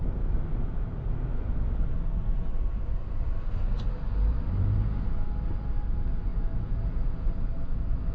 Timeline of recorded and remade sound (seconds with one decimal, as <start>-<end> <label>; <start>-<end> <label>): 0.0-6.3 recorded; 6.3-7.5 remade; 7.5-8.1 recorded